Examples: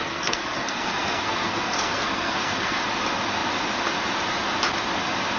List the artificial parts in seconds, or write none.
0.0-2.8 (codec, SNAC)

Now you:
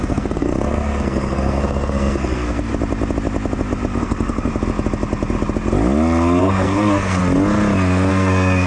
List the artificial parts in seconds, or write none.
0.0-2.7 (codec, SNAC); 4.0-4.5; 6.4-7.2; 8.1-8.7

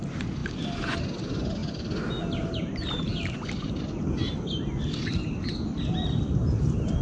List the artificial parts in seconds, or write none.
none

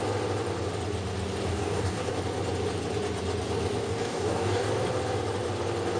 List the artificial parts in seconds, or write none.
1.5-2.2 (codec, DAC); 3.8-4.7